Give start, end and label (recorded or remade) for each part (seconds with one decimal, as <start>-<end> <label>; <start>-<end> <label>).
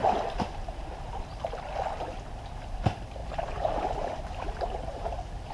0.0-3.2 recorded; 3.2-5.5 remade